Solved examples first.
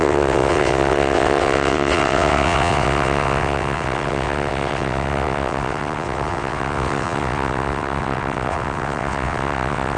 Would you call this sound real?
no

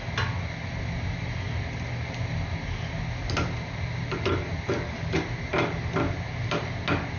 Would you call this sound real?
yes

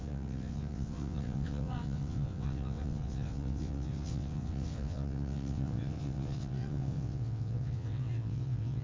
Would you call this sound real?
no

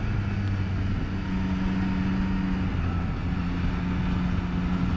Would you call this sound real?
yes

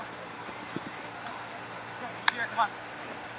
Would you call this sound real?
yes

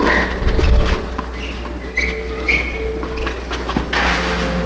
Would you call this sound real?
yes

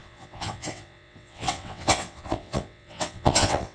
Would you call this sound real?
no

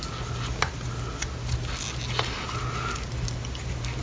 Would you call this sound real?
yes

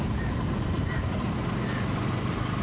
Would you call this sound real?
yes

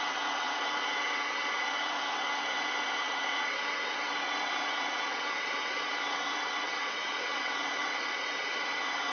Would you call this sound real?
no